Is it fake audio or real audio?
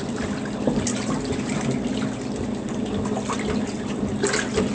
real